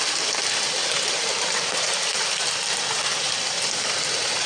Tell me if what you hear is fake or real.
real